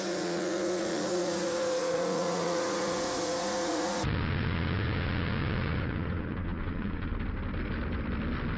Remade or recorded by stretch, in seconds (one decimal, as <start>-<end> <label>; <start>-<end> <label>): 0.0-7.1 remade; 7.1-8.6 recorded